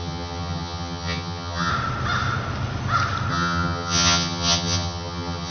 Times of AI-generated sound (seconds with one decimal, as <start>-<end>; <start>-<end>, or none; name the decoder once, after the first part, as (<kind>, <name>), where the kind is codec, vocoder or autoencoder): 0.0-1.7 (vocoder, HiFi-GAN); 3.3-5.5